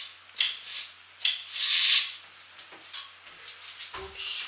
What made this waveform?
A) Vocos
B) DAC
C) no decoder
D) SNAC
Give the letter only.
C